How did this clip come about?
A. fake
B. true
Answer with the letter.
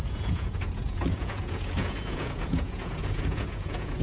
A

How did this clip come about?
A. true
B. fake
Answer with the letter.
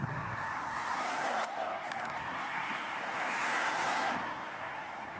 B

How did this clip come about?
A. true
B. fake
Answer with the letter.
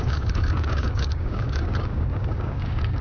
B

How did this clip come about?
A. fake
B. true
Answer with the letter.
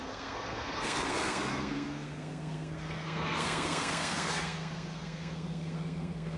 A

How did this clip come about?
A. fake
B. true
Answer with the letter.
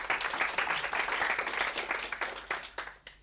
B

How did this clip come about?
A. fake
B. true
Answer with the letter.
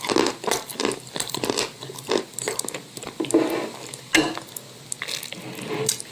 B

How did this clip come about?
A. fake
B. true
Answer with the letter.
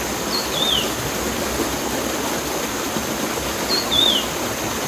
B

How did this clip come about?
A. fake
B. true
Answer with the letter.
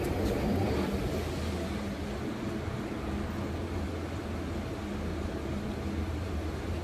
B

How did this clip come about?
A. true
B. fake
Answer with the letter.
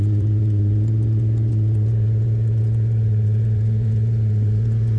B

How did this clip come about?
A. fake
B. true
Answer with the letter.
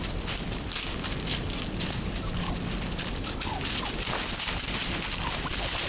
B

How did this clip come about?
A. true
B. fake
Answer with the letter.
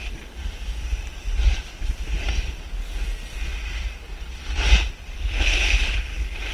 A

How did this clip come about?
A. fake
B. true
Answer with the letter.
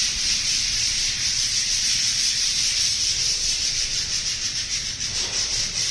A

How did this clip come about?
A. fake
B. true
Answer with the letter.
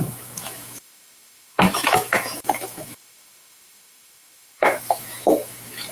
A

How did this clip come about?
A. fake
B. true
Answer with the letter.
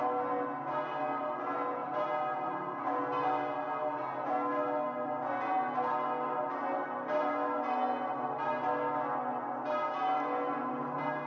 B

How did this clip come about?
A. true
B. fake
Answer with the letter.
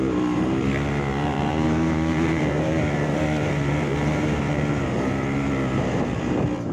B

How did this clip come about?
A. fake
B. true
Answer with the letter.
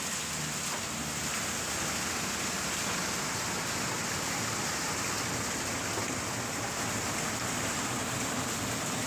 B